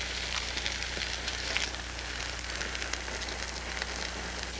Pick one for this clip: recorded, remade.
recorded